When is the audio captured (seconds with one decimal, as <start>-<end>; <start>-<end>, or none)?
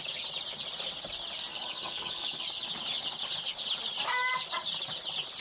0.0-1.5; 2.4-5.4